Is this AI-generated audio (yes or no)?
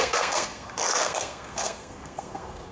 yes